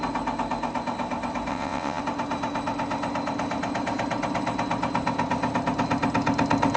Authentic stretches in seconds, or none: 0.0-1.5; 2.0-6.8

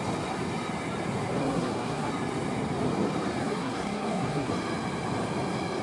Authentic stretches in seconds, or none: 0.0-1.4; 2.1-3.4; 4.5-5.8

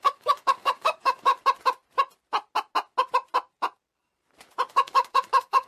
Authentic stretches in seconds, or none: 1.3-4.7

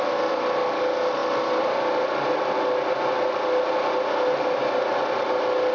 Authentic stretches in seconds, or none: 0.0-5.7

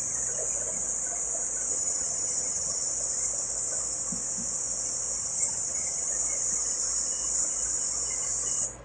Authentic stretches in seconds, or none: 0.0-1.7; 2.8-5.2; 6.1-8.8

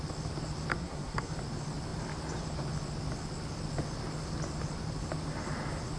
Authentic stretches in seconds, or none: 0.0-0.7; 1.3-6.0

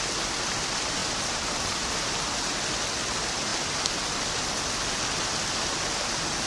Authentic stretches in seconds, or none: 0.0-6.5

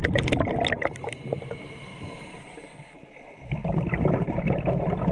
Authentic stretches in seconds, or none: 0.0-1.9; 2.5-3.6; 4.4-5.1